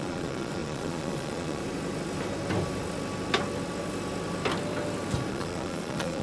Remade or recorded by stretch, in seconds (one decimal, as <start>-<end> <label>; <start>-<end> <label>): 0.0-1.6 remade; 1.6-5.3 recorded; 5.3-6.2 remade